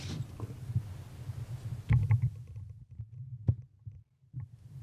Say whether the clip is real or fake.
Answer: real